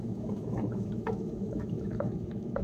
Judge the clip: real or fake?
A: fake